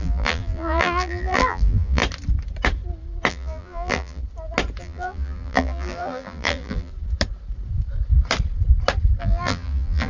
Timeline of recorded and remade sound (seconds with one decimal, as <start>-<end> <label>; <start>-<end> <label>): 0.0-2.0 remade; 2.0-3.3 recorded; 3.3-4.2 remade; 4.2-4.8 recorded; 4.8-6.9 remade; 6.9-9.2 recorded; 9.2-10.1 remade

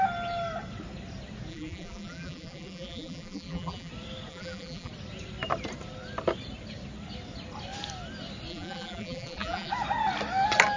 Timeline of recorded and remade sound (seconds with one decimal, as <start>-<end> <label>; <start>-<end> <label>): 0.0-1.5 recorded; 1.5-3.9 remade; 3.9-4.3 recorded; 4.3-4.9 remade; 4.9-8.5 recorded; 8.5-9.7 remade; 9.7-10.8 recorded

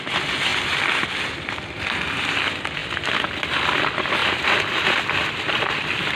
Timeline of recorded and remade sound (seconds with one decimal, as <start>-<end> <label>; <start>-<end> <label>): 0.0-2.8 recorded; 2.8-3.3 remade; 3.3-6.2 recorded

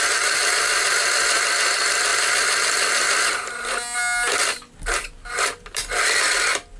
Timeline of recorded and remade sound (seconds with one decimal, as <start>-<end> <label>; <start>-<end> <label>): 0.0-6.8 recorded

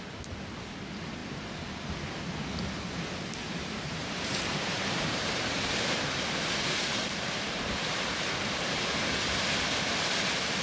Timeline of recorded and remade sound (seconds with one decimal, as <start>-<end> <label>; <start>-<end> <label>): 0.0-3.4 recorded; 3.4-8.3 remade; 8.3-10.6 recorded

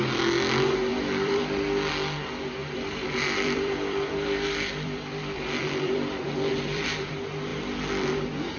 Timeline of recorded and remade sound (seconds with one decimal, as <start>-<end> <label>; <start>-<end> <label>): 0.0-0.9 recorded; 0.9-1.9 remade; 1.9-2.6 recorded; 2.6-7.1 remade; 7.1-8.6 recorded